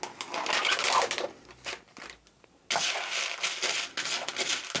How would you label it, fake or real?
real